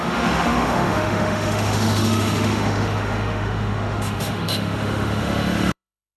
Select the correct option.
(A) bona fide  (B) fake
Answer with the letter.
B